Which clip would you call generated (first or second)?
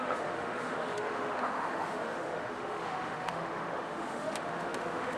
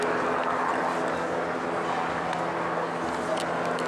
first